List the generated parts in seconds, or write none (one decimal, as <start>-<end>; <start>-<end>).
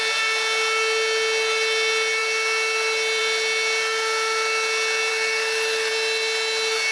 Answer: 5.1-5.9